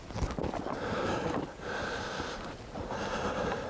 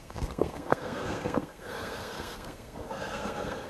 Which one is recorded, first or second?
first